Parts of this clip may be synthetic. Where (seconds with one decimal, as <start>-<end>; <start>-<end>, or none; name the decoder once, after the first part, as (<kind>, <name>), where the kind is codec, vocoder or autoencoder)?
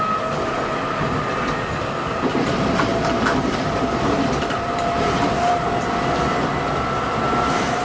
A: 2.3-5.8 (vocoder, BigVGAN v2)